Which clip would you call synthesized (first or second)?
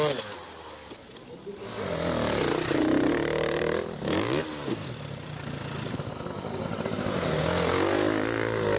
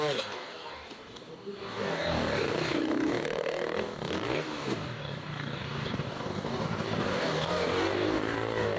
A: second